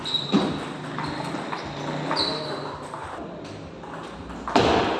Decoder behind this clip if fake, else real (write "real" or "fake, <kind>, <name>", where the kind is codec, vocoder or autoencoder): real